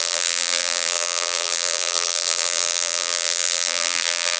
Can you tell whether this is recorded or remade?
remade